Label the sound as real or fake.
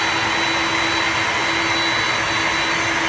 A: real